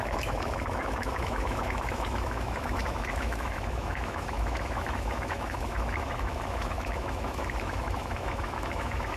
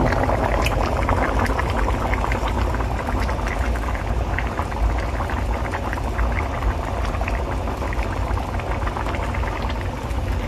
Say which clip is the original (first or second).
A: second